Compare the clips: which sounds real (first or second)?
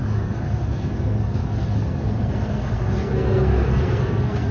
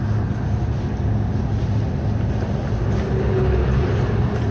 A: second